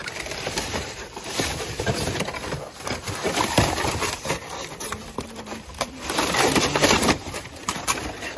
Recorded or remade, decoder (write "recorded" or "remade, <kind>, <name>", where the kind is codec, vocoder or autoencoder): remade, vocoder, BigVGAN v2